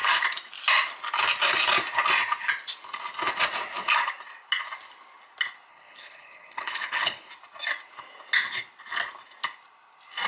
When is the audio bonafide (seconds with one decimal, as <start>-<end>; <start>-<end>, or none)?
0.0-5.7; 7.3-10.3